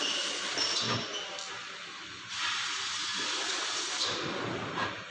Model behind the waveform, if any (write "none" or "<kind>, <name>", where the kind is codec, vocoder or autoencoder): none